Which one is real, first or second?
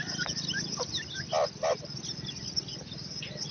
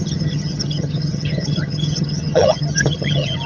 first